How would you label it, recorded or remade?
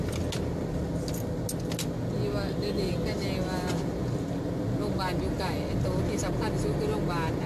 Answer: recorded